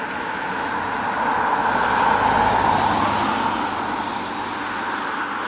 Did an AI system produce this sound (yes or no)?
no